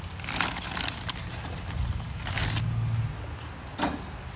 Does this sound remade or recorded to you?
recorded